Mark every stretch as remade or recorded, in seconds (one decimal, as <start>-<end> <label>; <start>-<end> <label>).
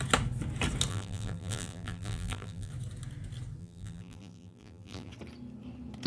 0.0-0.9 recorded; 0.9-2.7 remade; 2.7-3.6 recorded; 3.6-5.1 remade; 5.1-6.1 recorded